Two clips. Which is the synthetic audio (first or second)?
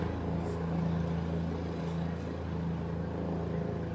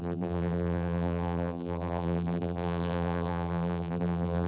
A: second